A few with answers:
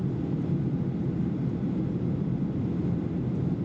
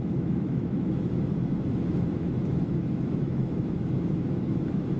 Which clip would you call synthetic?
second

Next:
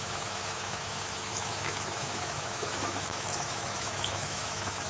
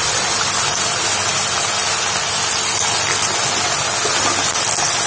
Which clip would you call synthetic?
first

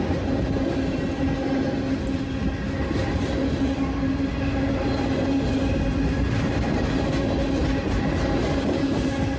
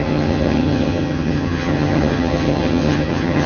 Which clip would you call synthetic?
second